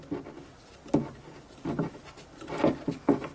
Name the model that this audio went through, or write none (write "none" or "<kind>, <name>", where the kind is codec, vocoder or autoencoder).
none